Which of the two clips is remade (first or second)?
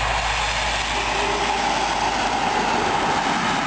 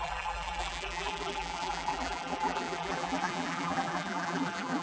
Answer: second